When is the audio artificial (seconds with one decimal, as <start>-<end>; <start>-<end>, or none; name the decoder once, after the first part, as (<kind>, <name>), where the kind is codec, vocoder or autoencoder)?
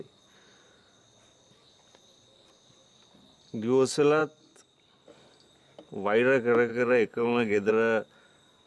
6.7-7.7 (codec, HILCodec)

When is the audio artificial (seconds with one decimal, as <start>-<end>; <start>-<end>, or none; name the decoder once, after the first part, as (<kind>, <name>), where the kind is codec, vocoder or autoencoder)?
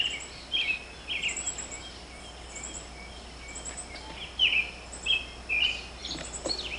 none